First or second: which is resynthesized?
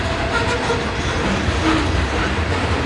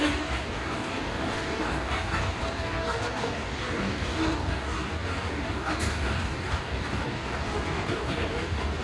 second